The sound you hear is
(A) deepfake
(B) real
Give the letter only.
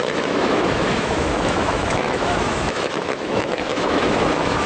A